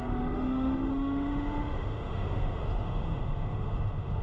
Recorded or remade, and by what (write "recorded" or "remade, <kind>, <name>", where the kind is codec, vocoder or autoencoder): remade, autoencoder, DAC-VAE